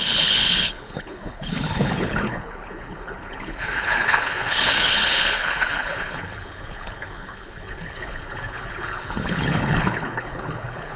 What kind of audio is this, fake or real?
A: fake